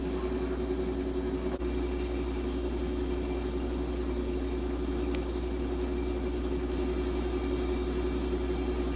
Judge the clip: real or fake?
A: real